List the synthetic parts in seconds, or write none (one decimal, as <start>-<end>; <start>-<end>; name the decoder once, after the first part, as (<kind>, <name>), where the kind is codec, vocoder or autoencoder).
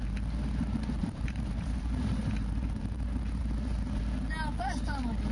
1.0-4.0 (vocoder, BigVGAN v2)